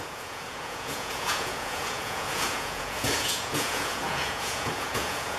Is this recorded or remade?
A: remade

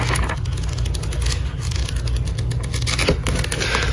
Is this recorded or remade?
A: recorded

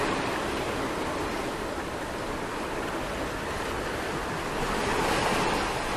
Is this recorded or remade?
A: recorded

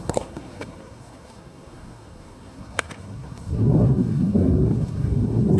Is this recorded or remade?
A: remade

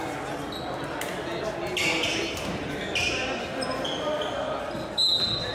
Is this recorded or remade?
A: recorded